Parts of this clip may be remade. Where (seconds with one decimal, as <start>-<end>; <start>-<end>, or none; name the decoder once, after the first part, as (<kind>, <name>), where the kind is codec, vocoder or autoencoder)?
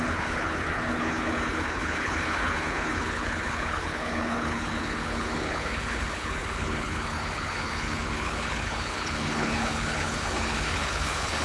0.0-11.4 (codec, HILCodec)